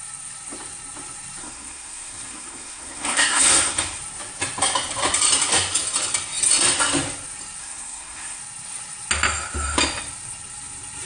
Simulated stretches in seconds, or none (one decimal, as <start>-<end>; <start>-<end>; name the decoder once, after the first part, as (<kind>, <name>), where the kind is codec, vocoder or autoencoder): 1.4-4.0 (codec, SNAC); 7.6-8.4